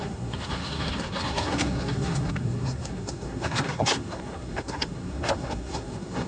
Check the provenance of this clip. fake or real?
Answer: fake